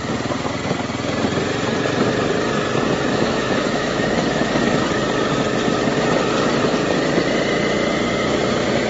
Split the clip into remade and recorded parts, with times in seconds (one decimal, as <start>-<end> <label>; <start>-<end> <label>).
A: 0.0-3.1 recorded; 3.1-4.1 remade; 4.1-8.9 recorded